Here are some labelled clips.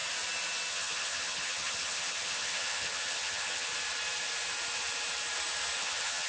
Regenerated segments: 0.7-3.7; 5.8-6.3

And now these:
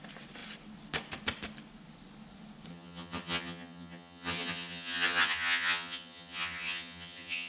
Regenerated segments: 2.7-7.5

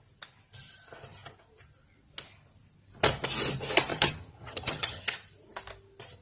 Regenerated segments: 3.9-5.0

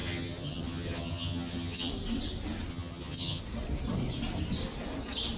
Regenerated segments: 0.0-1.9; 2.7-3.4

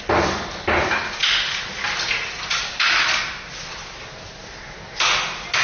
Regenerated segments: none

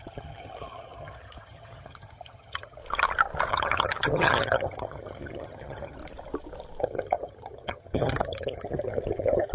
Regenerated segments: 0.0-2.8; 3.5-6.0; 6.8-9.5

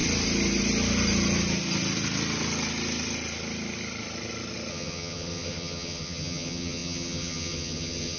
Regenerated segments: 4.7-8.2

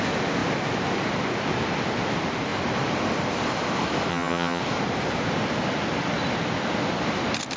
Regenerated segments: 4.1-4.6